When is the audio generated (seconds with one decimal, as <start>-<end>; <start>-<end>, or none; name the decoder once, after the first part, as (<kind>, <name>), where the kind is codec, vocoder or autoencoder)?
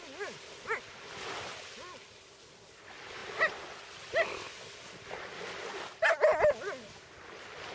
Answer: none